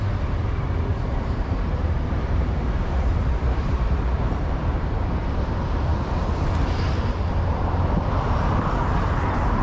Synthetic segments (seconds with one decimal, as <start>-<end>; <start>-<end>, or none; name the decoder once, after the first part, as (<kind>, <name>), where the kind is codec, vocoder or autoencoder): 0.9-5.2 (vocoder, BigVGAN v2)